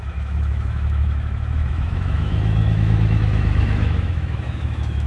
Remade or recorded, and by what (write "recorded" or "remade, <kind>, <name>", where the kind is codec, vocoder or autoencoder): remade, autoencoder, DAC-VAE